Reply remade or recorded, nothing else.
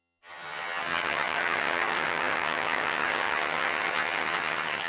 remade